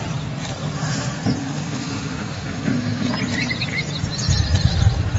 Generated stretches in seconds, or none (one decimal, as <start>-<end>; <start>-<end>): 1.4-3.1